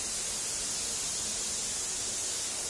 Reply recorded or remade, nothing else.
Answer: recorded